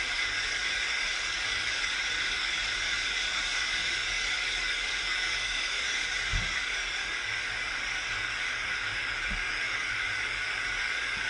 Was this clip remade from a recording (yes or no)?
yes